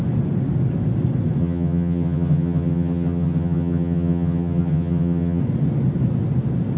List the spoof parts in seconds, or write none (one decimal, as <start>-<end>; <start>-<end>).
1.4-5.4